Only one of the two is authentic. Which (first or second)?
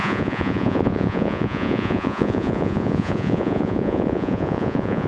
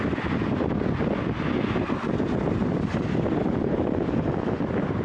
second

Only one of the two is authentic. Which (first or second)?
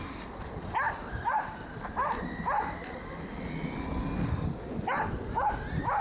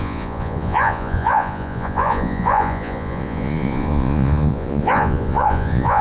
first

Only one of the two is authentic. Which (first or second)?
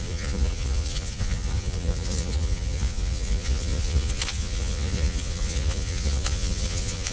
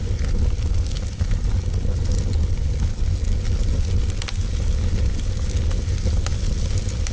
second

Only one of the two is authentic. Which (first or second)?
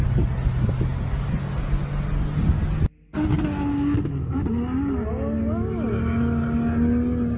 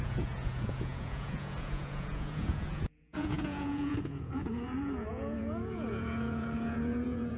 first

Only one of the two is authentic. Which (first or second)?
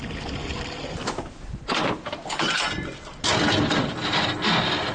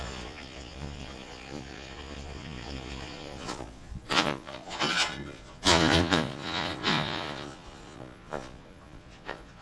first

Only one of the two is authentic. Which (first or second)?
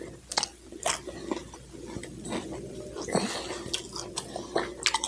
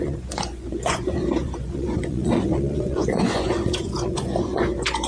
first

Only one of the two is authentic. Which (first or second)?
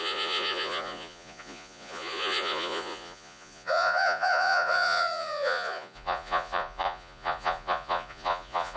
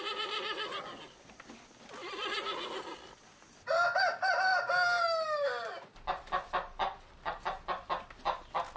second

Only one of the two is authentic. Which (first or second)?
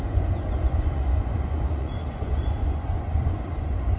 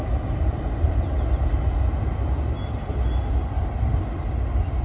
second